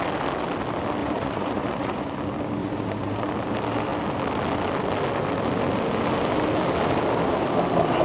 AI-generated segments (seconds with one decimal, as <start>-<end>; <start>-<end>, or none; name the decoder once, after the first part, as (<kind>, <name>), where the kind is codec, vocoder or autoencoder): 1.0-2.1 (vocoder, Vocos); 2.6-3.3